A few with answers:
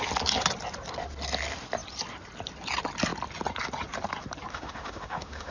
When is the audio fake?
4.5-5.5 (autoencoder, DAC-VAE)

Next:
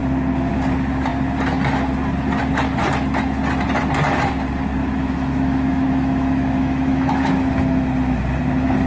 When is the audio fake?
4.8-7.3 (autoencoder, DAC-VAE)

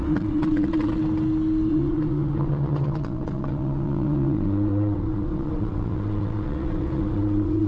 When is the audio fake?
0.0-1.0 (vocoder, WaveNeXt); 1.7-7.7

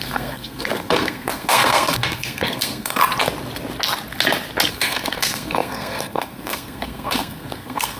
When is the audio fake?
0.0-3.0 (codec, SNAC); 4.7-8.0